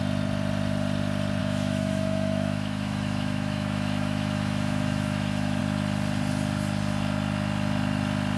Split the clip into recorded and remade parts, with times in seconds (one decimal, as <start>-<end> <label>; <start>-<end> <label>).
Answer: 0.0-1.4 recorded; 1.4-5.6 remade; 5.6-8.4 recorded